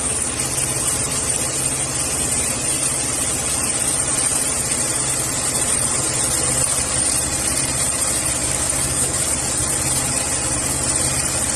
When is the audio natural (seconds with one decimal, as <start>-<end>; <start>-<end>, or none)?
0.0-8.4; 9.2-11.6